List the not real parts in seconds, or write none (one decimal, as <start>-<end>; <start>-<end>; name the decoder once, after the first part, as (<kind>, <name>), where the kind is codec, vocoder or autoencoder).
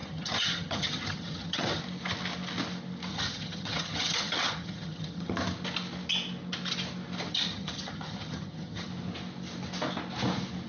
0.0-1.8 (vocoder, HiFi-GAN); 3.1-5.3; 7.3-8.9